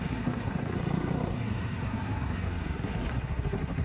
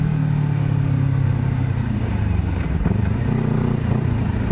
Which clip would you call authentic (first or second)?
second